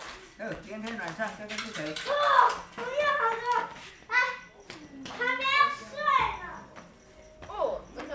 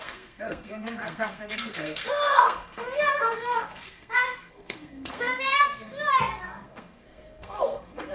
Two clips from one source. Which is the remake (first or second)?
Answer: second